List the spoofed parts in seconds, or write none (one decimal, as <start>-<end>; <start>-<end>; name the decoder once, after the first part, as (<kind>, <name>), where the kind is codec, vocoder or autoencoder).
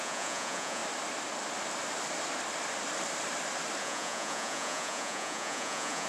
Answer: 0.0-0.8 (vocoder, Vocos); 3.8-6.1